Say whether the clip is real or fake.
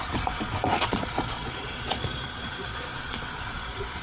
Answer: fake